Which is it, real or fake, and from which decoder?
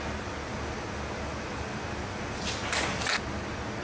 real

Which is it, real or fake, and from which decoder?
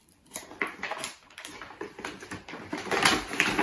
fake, vocoder, BigVGAN v2